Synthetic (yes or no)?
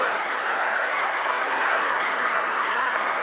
yes